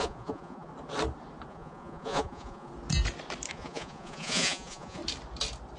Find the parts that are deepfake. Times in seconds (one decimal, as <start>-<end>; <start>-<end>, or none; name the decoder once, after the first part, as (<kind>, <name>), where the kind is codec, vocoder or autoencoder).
0.0-0.7 (vocoder, Vocos); 1.5-2.7; 3.5-5.0